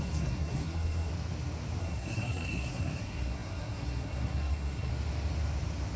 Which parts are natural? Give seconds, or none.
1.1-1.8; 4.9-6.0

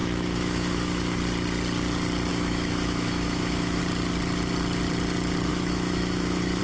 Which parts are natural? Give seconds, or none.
1.2-2.3; 3.8-5.5